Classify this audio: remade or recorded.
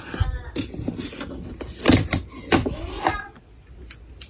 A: recorded